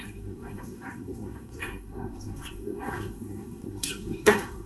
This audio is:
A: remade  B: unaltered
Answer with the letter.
A